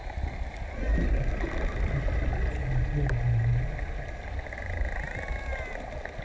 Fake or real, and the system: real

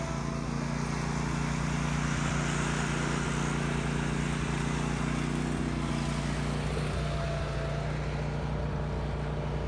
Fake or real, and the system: real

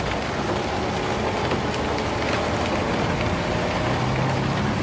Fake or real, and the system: real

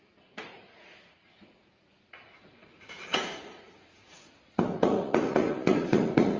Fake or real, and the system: fake, vocoder, Vocos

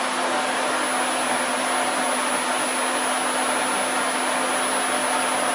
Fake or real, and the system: real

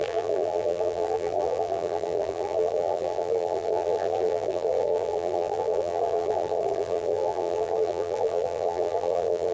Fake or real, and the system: fake, vocoder, BigVGAN v2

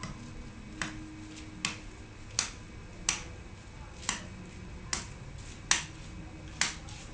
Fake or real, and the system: real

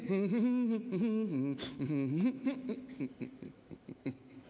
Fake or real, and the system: fake, autoencoder, DAC-VAE